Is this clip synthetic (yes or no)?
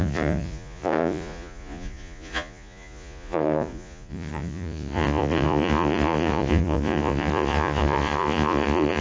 yes